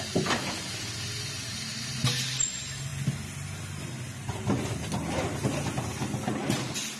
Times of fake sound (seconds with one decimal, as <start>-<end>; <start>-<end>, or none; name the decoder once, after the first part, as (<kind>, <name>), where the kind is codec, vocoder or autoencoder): none

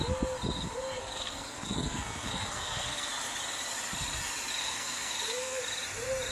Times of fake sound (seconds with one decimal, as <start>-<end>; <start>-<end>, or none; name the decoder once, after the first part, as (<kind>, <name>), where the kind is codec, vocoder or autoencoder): 1.0-3.1 (codec, SNAC); 4.6-5.6

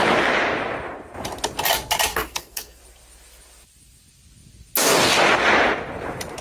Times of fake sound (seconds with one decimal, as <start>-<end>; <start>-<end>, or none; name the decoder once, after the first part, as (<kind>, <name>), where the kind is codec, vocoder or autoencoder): 2.1-2.8 (codec, SNAC)

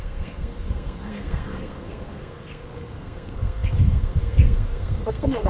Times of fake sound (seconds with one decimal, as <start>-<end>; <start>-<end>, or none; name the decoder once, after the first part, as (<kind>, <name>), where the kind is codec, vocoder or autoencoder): 0.0-5.5 (codec, SNAC)

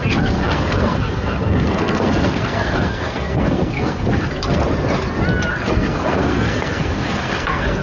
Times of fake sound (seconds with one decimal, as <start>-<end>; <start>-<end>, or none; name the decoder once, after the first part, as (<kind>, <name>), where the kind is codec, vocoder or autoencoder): 0.0-4.6 (codec, SNAC); 5.5-7.8